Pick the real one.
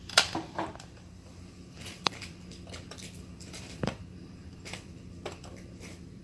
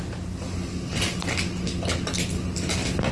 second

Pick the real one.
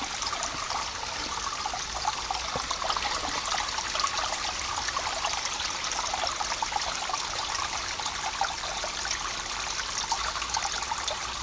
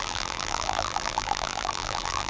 first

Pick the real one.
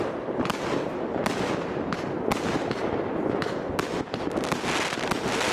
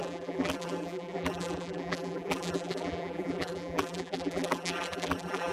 first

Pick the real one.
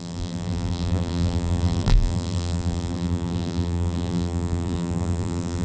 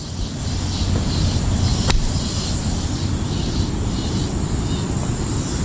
second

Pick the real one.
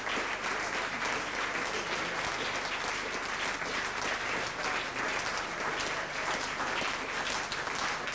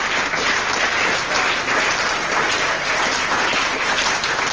first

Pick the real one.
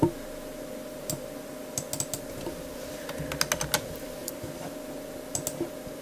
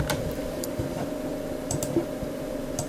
first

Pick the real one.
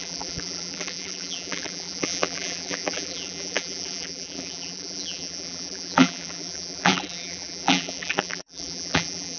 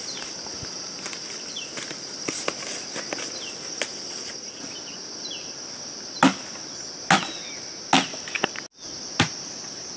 second